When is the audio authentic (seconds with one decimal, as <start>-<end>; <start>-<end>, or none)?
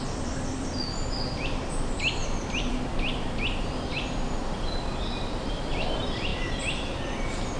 6.3-7.6